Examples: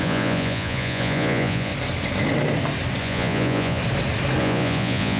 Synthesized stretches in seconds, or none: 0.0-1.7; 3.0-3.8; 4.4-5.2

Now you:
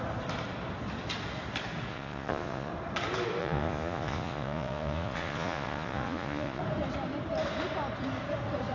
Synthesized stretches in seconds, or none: 1.9-2.7; 3.4-6.6

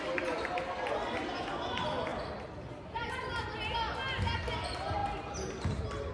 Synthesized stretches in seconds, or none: none

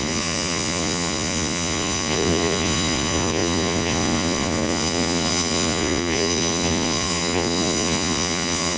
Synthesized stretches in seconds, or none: 0.0-8.8

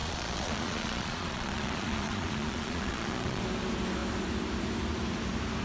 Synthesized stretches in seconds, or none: 0.0-3.4

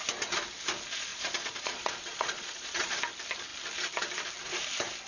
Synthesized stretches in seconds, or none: 1.1-3.0

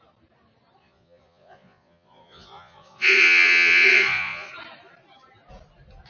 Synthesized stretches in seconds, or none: 0.8-4.5

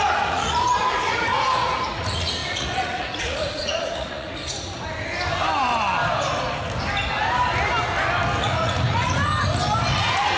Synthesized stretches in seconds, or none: 0.0-4.4; 8.4-9.3; 9.9-10.4